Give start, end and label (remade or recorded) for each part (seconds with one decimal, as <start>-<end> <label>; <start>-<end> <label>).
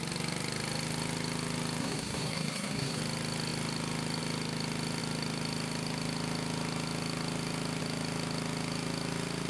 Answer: 0.0-1.8 recorded; 1.8-3.0 remade; 3.0-9.5 recorded